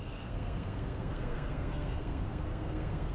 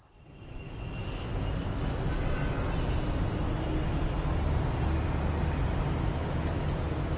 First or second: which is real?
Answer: second